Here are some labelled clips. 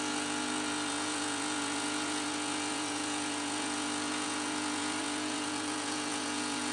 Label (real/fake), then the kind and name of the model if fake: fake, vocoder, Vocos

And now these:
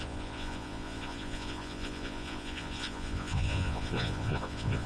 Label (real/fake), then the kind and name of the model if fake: fake, vocoder, Vocos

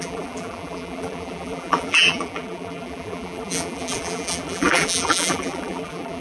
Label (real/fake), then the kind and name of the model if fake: fake, vocoder, BigVGAN v2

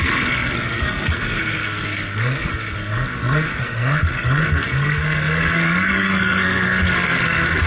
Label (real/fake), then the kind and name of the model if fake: fake, codec, SNAC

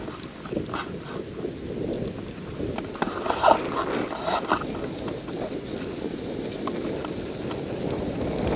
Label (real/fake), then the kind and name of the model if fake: real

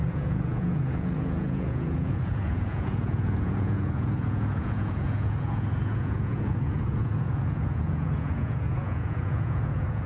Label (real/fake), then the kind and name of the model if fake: fake, vocoder, Vocos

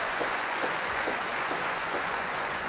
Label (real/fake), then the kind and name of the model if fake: fake, vocoder, Vocos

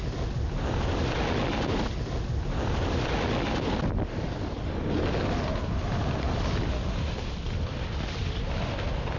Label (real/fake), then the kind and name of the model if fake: real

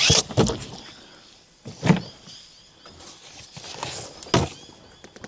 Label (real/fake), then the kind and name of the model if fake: real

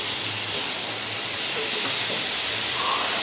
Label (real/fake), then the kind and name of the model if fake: real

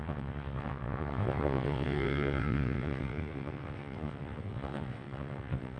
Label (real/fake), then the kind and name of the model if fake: fake, vocoder, WaveNeXt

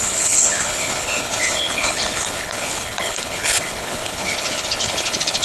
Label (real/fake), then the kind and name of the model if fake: fake, codec, HILCodec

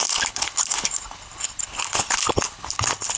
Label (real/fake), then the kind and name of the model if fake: fake, codec, HILCodec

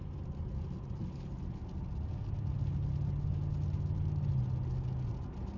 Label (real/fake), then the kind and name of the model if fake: real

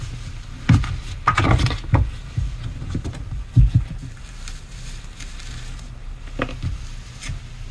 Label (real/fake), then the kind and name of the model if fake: real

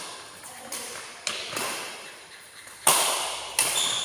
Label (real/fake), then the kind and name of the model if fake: fake, vocoder, BigVGAN v2